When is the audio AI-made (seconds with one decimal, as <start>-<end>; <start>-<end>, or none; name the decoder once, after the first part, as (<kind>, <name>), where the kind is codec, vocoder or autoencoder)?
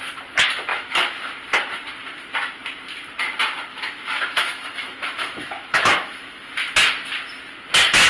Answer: 0.7-1.3 (autoencoder, DAC-VAE); 3.7-6.5